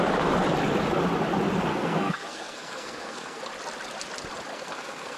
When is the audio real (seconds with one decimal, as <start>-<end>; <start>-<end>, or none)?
0.0-1.7; 3.4-4.5